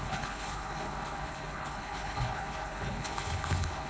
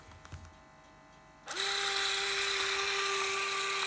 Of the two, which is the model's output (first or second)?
first